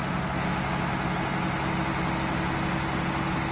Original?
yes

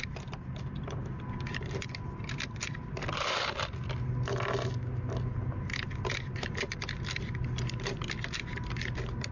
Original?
yes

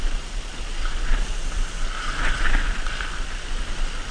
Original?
yes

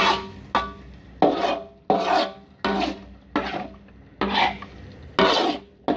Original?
yes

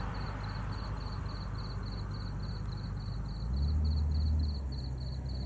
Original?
yes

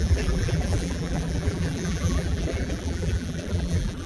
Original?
no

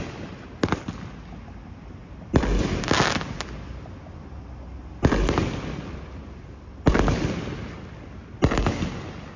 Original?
yes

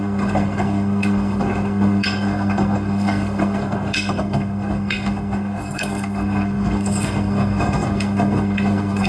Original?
no